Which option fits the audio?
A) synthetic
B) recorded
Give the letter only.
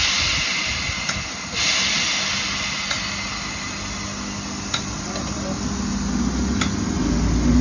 B